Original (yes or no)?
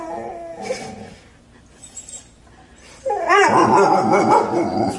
yes